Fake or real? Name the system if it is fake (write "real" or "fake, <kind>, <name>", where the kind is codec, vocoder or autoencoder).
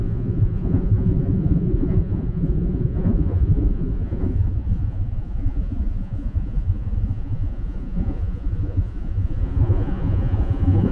fake, vocoder, Vocos